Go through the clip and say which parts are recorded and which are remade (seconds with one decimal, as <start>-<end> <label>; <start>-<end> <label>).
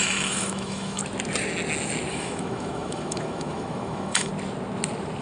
0.0-1.0 remade; 1.0-2.1 recorded; 2.1-4.3 remade; 4.3-5.2 recorded